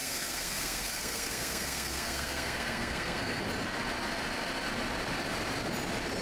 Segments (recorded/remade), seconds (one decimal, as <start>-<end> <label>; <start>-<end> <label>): 0.0-3.4 remade; 3.4-6.2 recorded